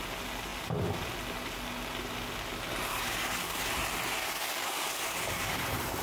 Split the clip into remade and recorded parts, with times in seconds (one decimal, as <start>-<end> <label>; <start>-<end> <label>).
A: 0.0-2.9 recorded; 2.9-3.6 remade; 3.6-4.2 recorded; 4.2-5.6 remade; 5.6-6.0 recorded